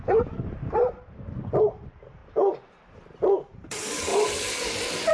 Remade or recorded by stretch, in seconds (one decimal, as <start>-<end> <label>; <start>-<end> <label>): 0.0-0.8 remade; 0.8-1.6 recorded; 1.6-2.2 remade; 2.2-2.9 recorded; 2.9-4.1 remade; 4.1-5.1 recorded